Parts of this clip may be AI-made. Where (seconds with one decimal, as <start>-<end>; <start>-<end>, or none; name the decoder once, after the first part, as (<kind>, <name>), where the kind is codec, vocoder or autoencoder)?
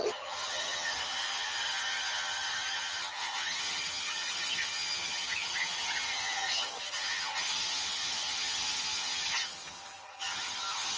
0.0-11.0 (vocoder, HiFi-GAN)